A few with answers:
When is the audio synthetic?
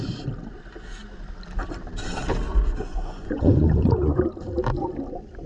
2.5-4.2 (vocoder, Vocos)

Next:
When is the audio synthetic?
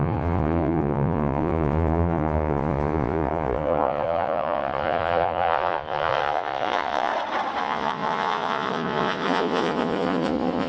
0.0-7.1 (vocoder, Vocos); 7.6-10.7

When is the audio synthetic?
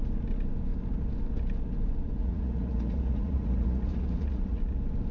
2.2-4.6 (vocoder, Vocos)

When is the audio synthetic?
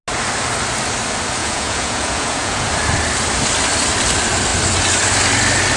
1.4-2.7 (vocoder, Vocos)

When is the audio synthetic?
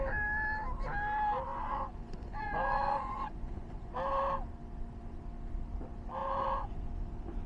1.5-3.9 (vocoder, Vocos); 6.2-6.8